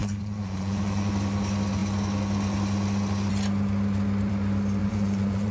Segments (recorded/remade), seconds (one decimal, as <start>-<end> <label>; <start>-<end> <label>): 0.0-1.1 remade; 1.1-4.8 recorded; 4.8-5.5 remade